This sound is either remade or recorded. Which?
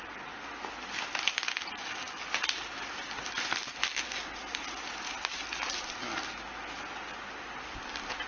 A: recorded